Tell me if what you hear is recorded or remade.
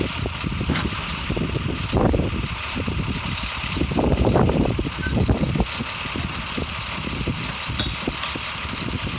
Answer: remade